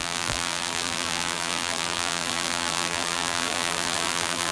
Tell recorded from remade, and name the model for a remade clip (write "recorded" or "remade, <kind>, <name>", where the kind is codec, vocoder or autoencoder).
remade, vocoder, BigVGAN v2